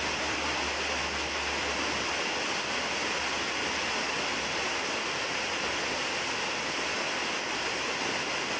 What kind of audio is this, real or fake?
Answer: real